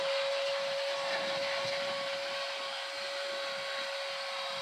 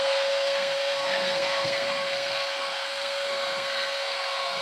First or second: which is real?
first